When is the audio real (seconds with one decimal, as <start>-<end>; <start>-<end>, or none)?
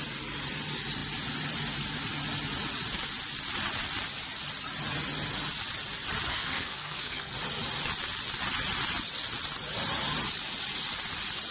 0.0-6.3; 7.3-11.5